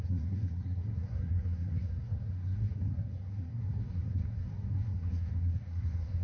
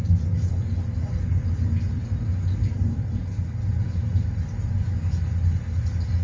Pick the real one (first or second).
second